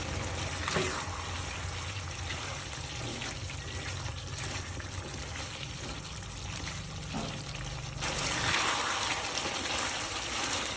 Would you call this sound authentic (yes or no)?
yes